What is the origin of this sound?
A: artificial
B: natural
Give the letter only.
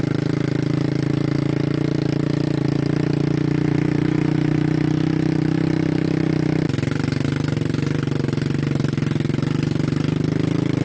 B